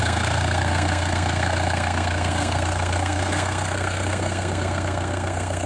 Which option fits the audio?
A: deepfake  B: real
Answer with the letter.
A